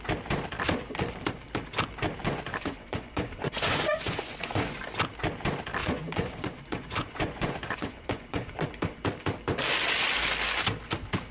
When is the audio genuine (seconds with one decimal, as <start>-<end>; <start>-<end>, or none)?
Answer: 0.0-2.2; 4.8-5.8; 8.7-11.3